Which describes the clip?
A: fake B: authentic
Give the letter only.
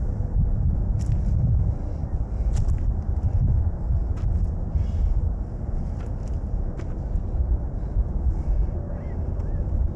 B